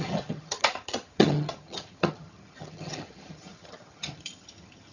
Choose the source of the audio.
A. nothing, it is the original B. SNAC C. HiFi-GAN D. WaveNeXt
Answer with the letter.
C